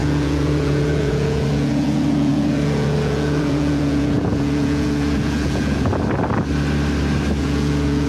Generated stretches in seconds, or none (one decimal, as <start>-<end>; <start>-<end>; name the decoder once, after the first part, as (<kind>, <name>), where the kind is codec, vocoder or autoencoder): 0.0-5.9 (vocoder, Vocos); 7.4-8.1